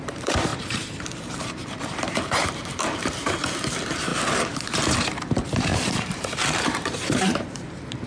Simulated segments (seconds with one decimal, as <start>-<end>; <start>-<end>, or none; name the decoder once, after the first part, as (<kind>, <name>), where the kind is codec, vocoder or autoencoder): 0.0-4.1 (vocoder, BigVGAN v2); 5.1-8.1